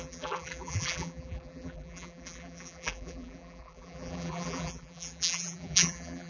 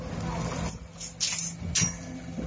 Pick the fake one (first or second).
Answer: first